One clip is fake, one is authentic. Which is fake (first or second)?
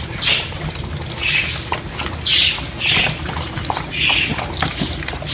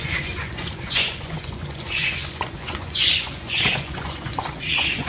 second